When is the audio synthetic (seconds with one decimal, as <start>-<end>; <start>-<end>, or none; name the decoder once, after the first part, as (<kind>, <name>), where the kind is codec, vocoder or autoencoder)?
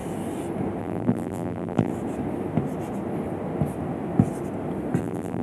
0.8-1.9 (vocoder, BigVGAN v2); 5.0-5.4